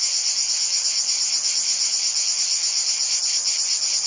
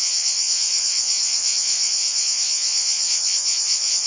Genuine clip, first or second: first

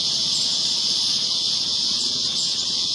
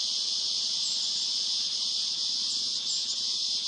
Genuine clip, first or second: second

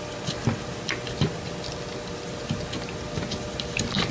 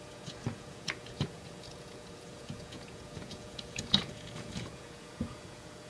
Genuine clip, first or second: first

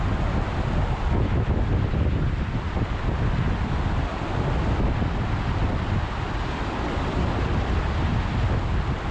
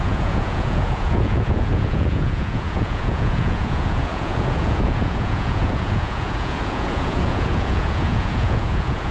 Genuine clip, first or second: first